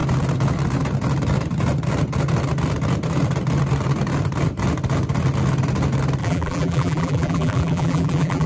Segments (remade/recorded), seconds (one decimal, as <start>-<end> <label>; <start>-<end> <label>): 0.0-6.2 recorded; 6.2-8.5 remade